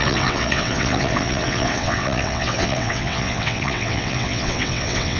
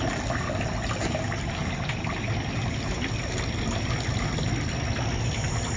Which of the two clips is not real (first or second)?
first